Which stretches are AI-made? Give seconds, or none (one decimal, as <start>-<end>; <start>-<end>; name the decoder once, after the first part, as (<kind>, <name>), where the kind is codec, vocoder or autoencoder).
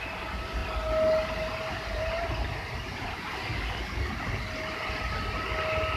3.3-4.1 (codec, DAC)